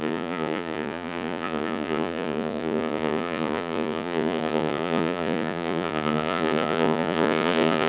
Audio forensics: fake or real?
fake